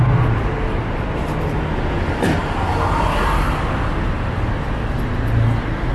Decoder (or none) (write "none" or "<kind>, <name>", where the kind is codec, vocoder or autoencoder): none